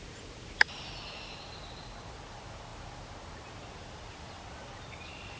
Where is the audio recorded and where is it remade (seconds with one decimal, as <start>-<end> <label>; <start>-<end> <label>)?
0.0-5.4 recorded